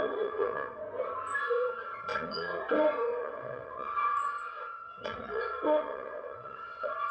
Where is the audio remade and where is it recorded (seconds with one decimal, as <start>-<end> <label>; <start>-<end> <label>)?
0.0-0.8 remade; 0.8-1.4 recorded; 1.4-7.1 remade